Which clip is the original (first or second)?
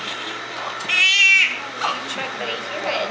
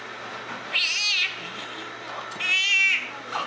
second